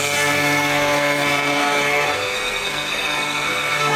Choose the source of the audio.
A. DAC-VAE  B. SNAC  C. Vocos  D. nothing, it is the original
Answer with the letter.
B